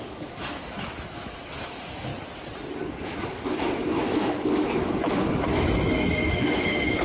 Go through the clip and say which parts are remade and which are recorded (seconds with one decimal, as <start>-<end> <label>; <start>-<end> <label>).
0.0-2.1 remade; 2.1-2.9 recorded; 2.9-7.0 remade